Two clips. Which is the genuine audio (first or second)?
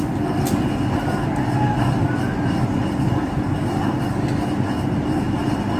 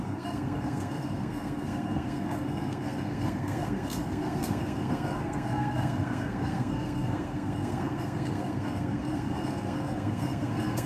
first